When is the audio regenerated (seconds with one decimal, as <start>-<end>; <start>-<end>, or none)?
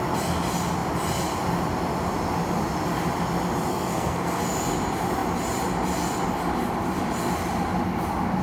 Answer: 3.7-4.4